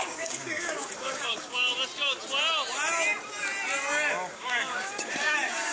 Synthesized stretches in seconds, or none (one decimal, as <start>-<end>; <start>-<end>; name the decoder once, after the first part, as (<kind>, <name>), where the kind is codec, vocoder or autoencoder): 0.0-1.7 (codec, DAC); 4.1-5.7